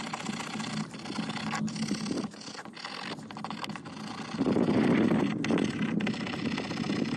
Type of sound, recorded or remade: recorded